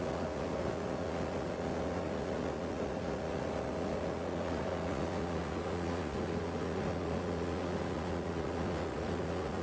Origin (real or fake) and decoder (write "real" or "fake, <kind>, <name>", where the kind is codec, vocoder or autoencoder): fake, vocoder, Vocos